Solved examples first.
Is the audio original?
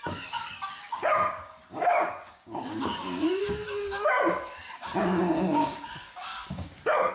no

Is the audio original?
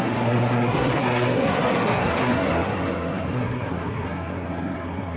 no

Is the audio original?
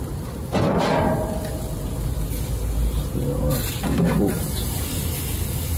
yes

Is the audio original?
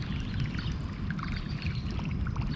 yes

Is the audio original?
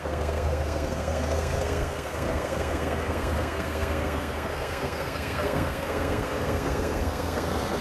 no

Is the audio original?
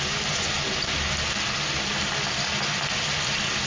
yes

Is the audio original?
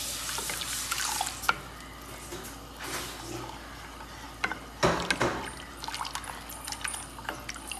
yes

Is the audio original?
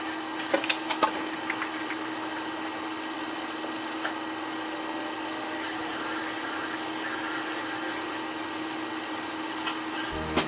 yes